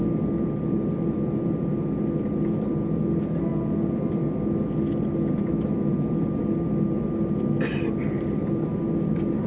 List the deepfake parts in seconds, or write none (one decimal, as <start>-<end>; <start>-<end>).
none